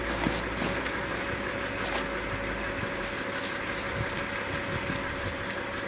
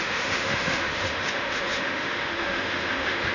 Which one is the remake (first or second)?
second